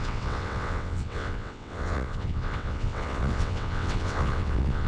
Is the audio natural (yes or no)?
no